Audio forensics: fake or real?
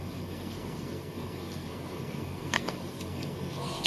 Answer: fake